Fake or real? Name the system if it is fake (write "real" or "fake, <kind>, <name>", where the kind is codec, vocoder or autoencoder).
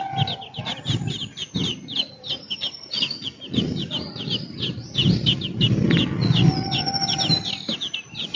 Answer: real